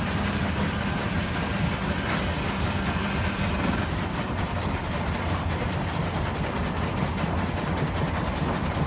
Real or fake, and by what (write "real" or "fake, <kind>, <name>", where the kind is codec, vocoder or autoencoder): real